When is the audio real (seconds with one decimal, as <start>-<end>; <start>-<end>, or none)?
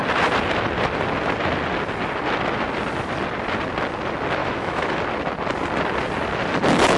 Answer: 0.0-4.4; 5.0-7.0